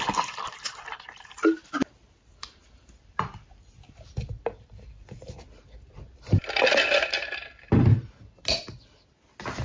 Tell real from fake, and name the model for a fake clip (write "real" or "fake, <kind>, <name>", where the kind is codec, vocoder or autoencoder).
real